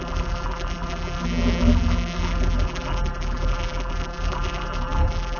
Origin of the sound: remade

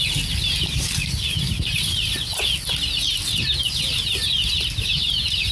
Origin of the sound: recorded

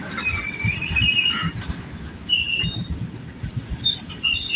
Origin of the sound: recorded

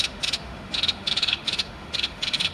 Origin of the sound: remade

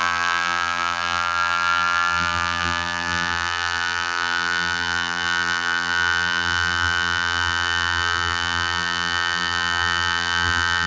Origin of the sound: remade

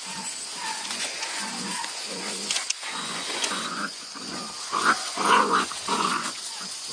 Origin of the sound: remade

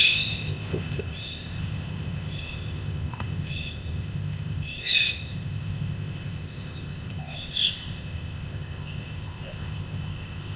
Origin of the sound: remade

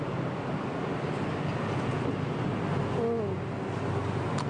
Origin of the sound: recorded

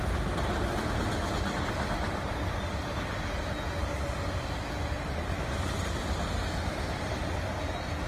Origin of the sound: recorded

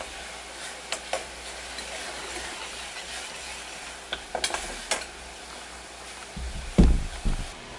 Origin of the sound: recorded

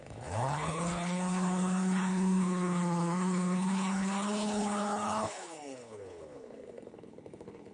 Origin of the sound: remade